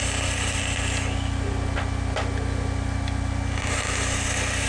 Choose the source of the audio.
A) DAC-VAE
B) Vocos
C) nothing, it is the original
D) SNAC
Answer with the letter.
C